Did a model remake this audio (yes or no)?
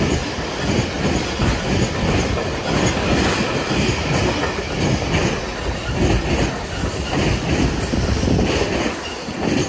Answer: no